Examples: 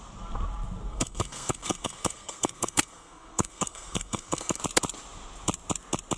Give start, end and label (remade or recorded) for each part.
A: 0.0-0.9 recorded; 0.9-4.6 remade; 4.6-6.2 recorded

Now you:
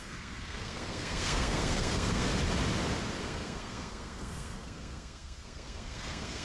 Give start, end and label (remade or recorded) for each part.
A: 0.0-2.3 remade; 2.3-3.2 recorded; 3.2-6.4 remade